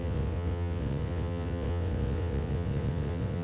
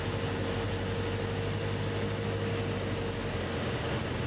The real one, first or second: second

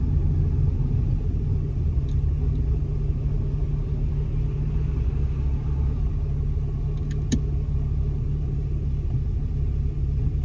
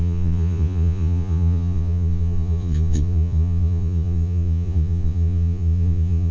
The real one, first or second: first